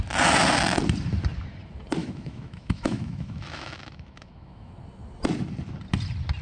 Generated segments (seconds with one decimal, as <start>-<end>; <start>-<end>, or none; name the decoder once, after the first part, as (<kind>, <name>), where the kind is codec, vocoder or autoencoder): 2.0-4.7 (autoencoder, DAC-VAE)